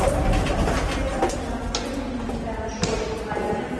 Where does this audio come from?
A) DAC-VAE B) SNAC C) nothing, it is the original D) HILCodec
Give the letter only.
C